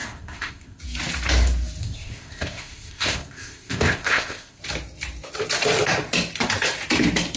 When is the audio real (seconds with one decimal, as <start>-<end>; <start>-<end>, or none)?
0.8-1.8; 4.6-7.4